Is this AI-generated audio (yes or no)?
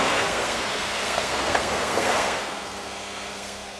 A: yes